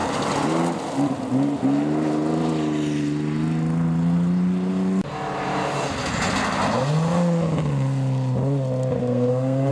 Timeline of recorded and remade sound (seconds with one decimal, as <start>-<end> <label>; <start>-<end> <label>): 0.0-9.0 recorded; 9.0-9.7 remade